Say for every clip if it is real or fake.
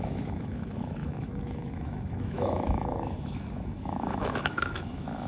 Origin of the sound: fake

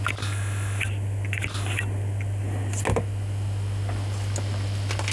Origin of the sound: real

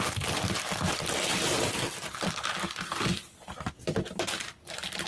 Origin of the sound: real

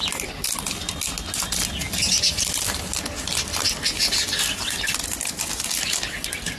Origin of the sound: real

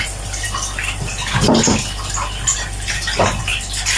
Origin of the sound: real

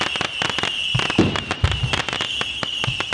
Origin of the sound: real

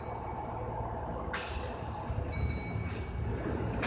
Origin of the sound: real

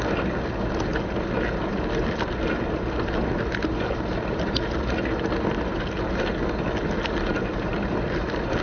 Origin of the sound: real